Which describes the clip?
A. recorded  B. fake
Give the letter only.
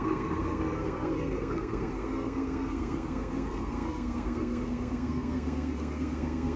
B